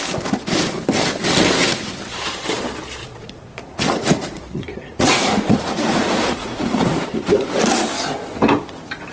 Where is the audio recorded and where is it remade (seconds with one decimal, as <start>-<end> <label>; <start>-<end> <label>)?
0.0-3.0 recorded; 3.0-7.3 remade; 7.3-9.1 recorded

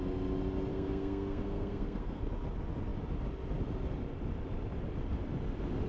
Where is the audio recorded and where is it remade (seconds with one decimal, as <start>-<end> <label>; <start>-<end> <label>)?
0.0-0.7 recorded; 0.7-2.2 remade; 2.2-5.9 recorded

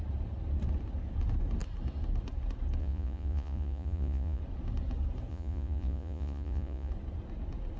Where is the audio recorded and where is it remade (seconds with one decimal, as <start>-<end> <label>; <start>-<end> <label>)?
0.0-2.8 recorded; 2.8-4.4 remade; 4.4-5.3 recorded; 5.3-6.9 remade; 6.9-7.8 recorded

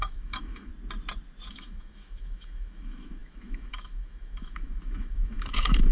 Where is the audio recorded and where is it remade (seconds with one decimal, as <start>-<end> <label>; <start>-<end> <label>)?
0.0-0.7 remade; 0.7-1.5 recorded; 1.5-5.9 remade

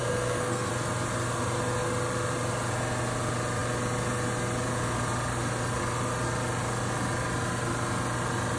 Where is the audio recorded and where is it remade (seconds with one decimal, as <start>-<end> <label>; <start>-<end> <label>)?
0.0-0.7 remade; 0.7-8.6 recorded

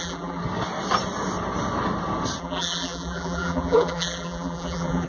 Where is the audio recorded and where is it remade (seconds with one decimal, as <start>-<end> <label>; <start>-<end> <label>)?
0.0-0.4 remade; 0.4-2.4 recorded; 2.4-5.1 remade

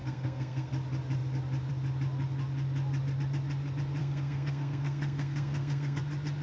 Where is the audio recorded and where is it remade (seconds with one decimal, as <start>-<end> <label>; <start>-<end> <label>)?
0.0-0.7 remade; 0.7-4.0 recorded; 4.0-6.0 remade; 6.0-6.4 recorded